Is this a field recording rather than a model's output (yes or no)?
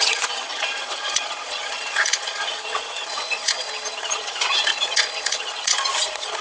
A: no